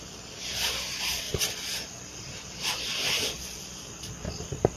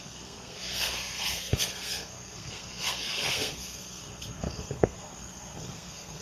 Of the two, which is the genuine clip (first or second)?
first